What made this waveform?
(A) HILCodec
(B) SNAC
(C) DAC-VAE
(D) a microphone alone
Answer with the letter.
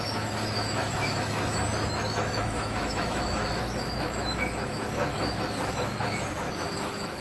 C